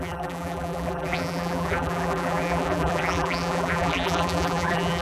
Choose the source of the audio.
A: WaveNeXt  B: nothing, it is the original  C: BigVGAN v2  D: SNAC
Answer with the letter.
C